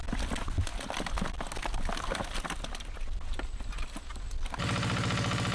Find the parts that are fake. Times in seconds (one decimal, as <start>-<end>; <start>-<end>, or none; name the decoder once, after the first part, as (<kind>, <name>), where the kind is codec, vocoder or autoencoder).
none